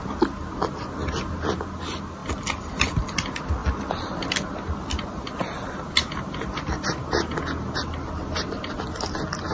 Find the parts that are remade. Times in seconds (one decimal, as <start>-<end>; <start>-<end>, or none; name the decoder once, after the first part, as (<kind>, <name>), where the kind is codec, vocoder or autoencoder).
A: none